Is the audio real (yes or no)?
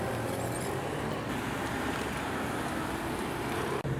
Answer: yes